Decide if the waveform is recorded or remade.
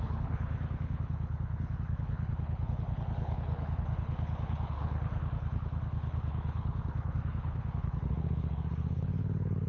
remade